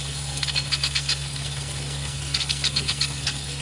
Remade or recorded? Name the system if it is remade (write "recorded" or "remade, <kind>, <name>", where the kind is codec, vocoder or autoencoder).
remade, codec, SNAC